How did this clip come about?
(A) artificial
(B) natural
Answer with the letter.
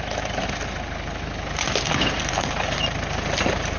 B